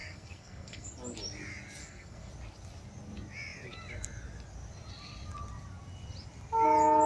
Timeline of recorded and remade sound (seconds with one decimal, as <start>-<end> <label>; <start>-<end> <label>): 0.0-0.9 remade; 0.9-1.8 recorded; 1.8-2.3 remade; 2.3-7.1 recorded